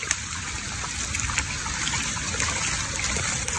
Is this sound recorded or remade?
recorded